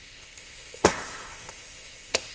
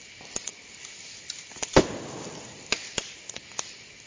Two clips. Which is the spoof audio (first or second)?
first